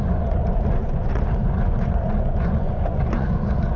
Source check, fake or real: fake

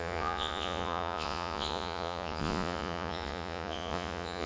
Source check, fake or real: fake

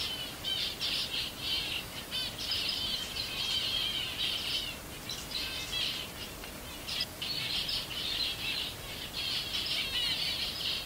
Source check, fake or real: fake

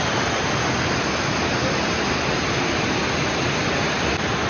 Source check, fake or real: real